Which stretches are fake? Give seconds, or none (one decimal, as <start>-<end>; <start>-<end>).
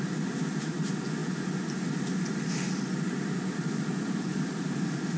none